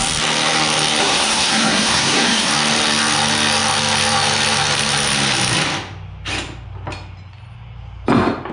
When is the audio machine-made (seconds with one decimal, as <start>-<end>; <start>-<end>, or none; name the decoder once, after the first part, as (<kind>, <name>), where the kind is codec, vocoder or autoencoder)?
1.0-2.5 (codec, SNAC)